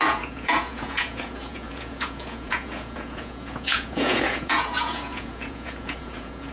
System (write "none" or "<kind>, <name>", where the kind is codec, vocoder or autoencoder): vocoder, Vocos